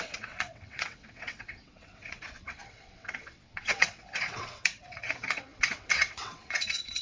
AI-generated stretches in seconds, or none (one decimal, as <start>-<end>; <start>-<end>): 0.0-7.0

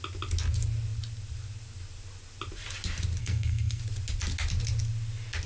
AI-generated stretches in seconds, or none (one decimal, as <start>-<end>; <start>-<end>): 3.2-3.8

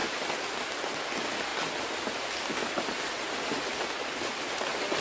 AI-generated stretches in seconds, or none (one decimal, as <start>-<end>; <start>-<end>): none

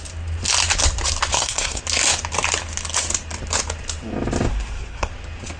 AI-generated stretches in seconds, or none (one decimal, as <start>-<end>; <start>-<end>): 1.3-1.8; 4.5-5.1